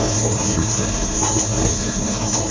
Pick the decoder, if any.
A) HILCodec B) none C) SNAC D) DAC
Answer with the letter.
C